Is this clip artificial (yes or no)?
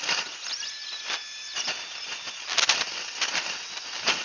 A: no